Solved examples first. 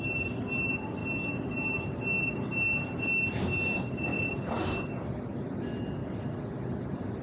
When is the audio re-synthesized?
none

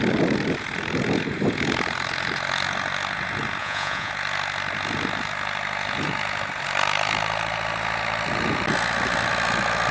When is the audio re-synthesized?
3.6-4.1

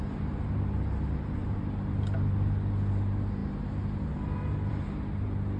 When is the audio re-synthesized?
none

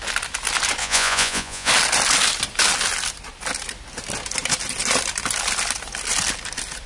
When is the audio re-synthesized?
0.8-1.7

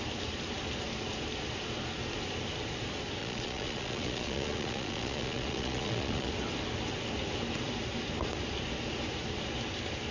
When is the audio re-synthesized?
3.2-6.3

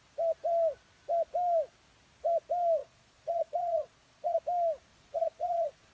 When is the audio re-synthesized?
2.8-4.4; 4.9-5.9

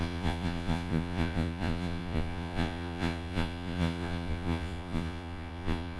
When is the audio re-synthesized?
0.0-6.0